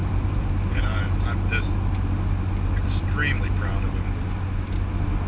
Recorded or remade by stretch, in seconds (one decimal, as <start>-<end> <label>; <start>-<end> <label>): 0.0-0.8 remade; 0.8-5.3 recorded